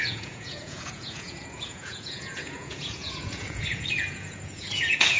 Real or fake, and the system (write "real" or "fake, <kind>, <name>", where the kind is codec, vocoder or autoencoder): fake, vocoder, Vocos